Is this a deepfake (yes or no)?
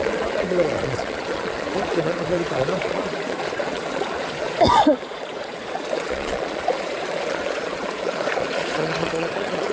yes